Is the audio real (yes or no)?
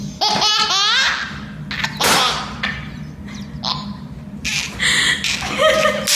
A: yes